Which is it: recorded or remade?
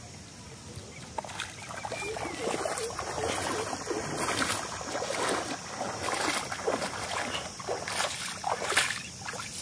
recorded